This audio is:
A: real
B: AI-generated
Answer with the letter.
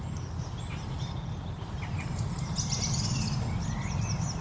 A